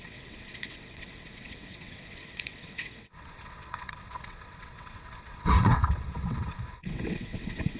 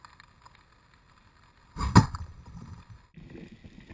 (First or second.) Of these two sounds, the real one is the second